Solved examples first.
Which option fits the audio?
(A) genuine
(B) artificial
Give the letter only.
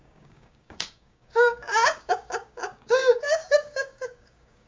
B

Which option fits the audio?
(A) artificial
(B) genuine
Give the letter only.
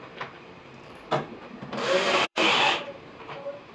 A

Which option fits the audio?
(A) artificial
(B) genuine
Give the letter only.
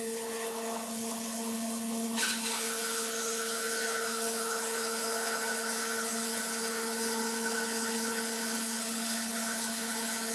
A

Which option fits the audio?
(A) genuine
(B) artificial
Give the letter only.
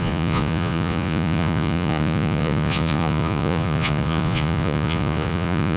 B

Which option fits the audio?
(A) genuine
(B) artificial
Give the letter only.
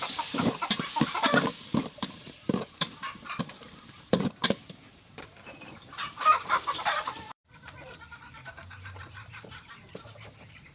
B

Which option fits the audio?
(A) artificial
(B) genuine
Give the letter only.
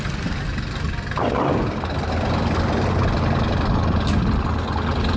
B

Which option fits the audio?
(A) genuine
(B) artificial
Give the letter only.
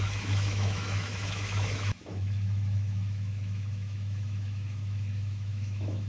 B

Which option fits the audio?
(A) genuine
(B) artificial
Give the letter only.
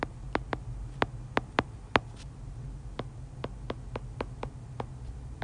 A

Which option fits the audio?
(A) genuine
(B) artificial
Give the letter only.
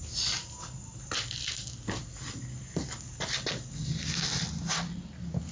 A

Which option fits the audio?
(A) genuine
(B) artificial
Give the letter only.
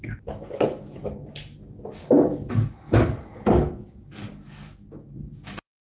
B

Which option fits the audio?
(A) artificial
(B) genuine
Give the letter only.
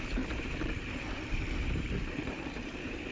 A